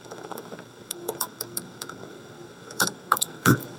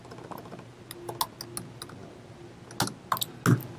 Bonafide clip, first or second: second